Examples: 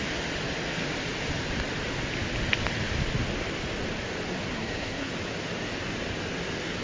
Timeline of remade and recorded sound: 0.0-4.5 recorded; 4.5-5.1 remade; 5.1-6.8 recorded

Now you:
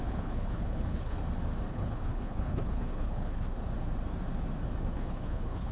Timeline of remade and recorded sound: 0.0-1.2 remade; 1.2-1.7 recorded; 1.7-3.6 remade; 3.6-4.8 recorded; 4.8-5.7 remade

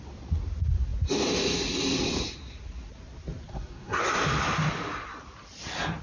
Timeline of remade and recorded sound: 0.0-3.5 recorded; 3.5-4.1 remade; 4.1-6.0 recorded

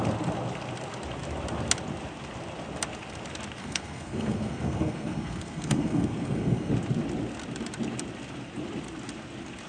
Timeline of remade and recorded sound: 0.0-3.6 recorded; 3.6-6.7 remade; 6.7-9.7 recorded

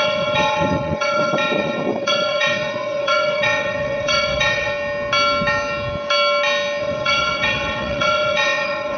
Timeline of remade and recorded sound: 0.0-4.7 remade; 4.7-6.8 recorded; 6.8-9.0 remade